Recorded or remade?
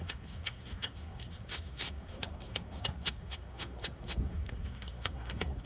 remade